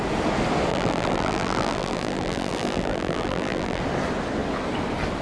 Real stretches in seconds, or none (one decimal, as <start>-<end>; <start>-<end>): 0.0-0.7; 3.8-5.2